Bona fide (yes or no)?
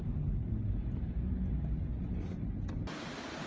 yes